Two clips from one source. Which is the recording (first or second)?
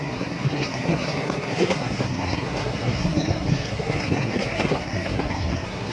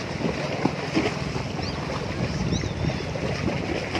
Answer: second